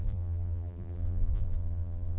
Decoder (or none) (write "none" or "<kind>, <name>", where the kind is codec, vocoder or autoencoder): vocoder, BigVGAN v2